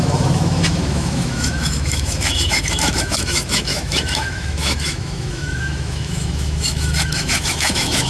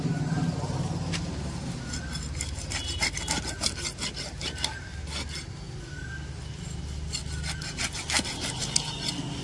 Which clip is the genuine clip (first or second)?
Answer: second